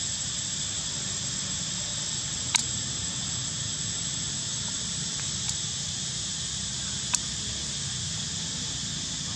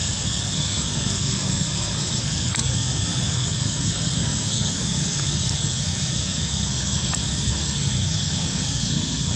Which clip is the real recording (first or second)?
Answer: first